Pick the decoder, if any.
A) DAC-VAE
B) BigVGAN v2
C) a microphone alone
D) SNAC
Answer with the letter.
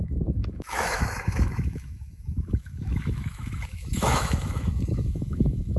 A